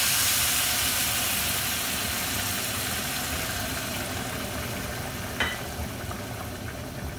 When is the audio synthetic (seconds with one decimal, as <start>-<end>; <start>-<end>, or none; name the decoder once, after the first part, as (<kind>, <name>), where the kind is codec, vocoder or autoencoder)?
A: 0.0-1.0 (vocoder, BigVGAN v2); 5.3-7.2

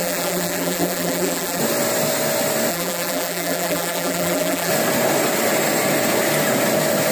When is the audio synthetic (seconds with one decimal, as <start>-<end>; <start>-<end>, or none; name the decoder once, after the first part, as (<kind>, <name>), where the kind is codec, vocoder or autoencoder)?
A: 0.0-1.6 (vocoder, BigVGAN v2); 2.7-4.7